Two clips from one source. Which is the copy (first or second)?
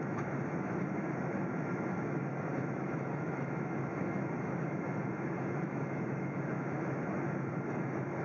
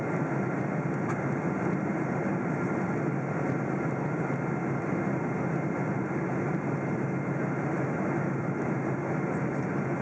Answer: first